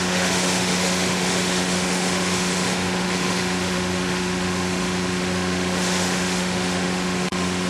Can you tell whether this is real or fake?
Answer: fake